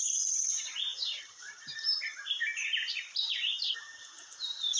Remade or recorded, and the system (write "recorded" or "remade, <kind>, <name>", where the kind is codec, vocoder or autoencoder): remade, vocoder, BigVGAN v2